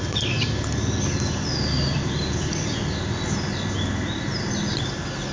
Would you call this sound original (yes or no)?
yes